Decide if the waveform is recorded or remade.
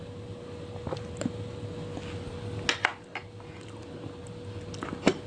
recorded